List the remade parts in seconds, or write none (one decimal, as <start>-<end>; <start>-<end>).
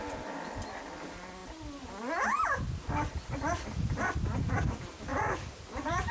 5.1-6.1